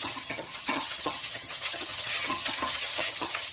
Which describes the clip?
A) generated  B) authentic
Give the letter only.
A